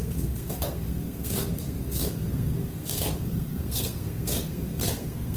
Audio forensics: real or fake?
fake